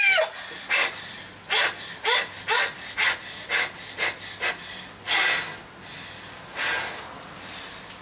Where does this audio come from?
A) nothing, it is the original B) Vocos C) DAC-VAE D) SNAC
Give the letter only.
A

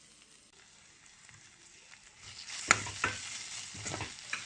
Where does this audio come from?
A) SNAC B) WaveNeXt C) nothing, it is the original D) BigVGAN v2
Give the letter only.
C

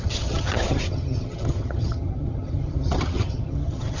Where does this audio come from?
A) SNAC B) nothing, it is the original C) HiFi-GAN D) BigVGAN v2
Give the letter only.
C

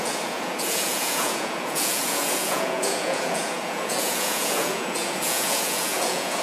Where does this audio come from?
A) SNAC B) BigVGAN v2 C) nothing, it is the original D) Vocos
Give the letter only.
D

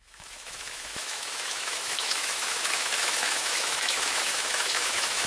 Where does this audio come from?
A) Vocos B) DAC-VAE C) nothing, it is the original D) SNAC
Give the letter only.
B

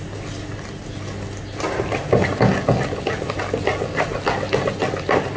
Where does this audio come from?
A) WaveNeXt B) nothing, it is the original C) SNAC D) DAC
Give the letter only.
B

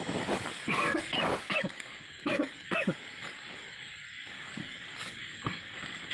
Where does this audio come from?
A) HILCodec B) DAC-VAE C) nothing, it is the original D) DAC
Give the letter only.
D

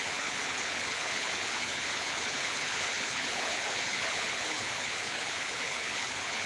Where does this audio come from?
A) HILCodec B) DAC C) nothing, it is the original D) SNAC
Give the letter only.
A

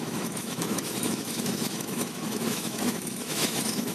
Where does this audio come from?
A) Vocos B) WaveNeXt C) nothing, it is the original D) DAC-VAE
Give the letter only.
D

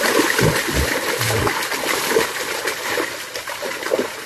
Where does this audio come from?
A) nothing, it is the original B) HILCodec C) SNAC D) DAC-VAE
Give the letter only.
A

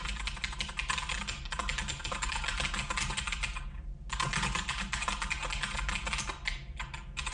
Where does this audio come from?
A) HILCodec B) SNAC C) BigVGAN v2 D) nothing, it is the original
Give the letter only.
D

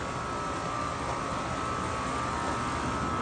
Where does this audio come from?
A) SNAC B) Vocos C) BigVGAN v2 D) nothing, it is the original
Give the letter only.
D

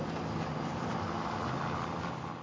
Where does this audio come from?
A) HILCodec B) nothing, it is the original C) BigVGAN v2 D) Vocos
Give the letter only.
B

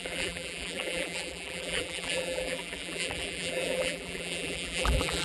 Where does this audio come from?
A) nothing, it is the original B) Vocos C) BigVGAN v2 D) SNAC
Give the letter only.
C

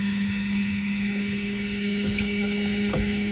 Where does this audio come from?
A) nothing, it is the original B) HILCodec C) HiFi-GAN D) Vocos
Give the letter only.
B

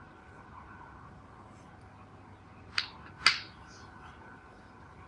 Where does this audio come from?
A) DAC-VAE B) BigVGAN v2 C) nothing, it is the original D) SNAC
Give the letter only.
C